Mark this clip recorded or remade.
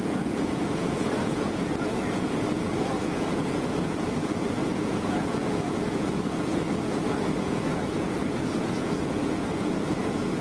remade